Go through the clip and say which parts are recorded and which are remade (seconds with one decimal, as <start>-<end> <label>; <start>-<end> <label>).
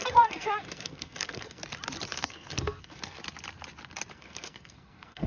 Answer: 0.0-1.6 remade; 1.6-2.1 recorded; 2.1-3.2 remade; 3.2-4.1 recorded; 4.1-5.3 remade